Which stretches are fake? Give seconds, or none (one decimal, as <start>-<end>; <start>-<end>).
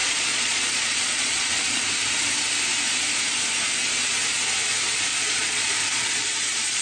0.0-1.8; 5.1-6.8